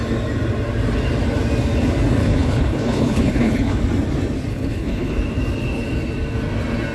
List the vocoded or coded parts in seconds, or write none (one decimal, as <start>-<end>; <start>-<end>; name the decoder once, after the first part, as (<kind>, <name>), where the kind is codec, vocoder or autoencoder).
2.2-3.8 (codec, HILCodec); 4.5-5.2